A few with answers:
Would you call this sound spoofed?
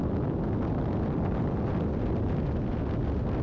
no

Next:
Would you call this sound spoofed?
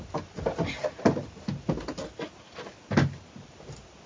no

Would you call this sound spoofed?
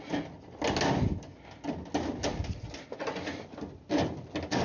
no